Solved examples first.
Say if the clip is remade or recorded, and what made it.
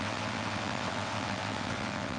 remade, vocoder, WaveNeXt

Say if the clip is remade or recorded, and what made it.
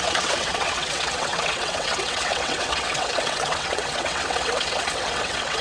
remade, vocoder, WaveNeXt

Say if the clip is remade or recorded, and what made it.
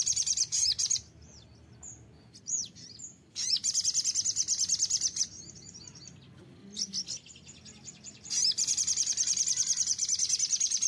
recorded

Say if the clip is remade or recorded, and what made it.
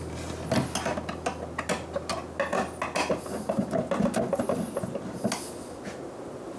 recorded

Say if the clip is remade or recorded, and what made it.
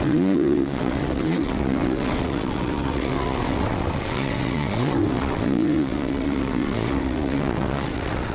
remade, vocoder, WaveNeXt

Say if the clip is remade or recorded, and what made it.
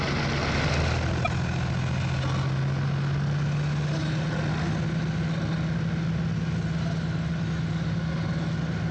recorded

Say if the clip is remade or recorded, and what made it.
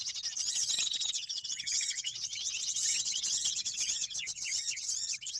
remade, vocoder, WaveNeXt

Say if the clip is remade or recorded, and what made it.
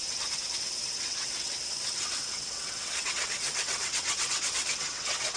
remade, vocoder, WaveNeXt